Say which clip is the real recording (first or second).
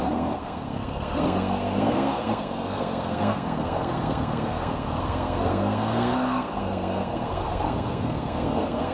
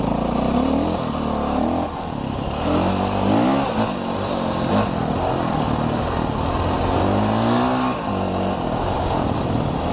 second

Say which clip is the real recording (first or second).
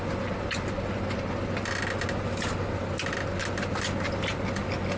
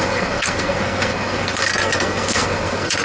first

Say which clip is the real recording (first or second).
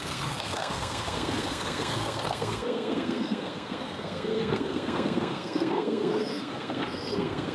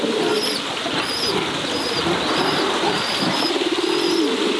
second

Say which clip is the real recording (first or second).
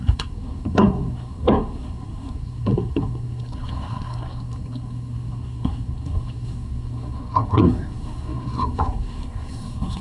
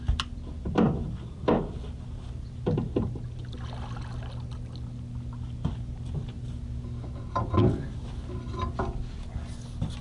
second